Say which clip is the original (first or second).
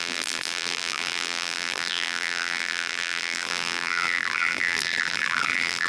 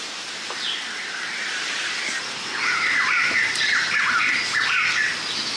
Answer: second